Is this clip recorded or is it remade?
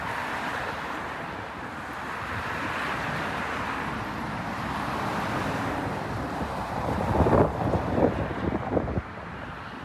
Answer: recorded